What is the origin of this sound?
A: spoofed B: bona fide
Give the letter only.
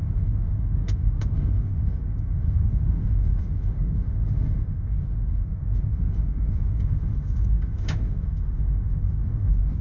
A